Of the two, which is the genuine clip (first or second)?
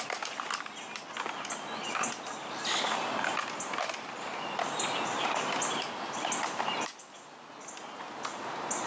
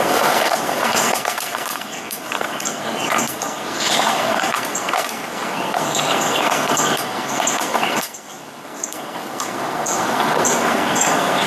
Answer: first